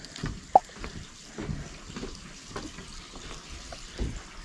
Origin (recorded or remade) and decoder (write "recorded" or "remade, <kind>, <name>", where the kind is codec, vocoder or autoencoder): recorded